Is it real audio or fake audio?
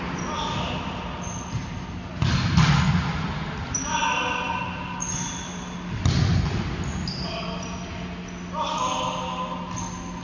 real